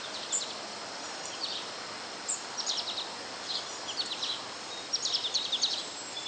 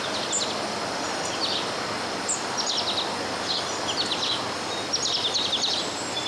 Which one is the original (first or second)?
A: second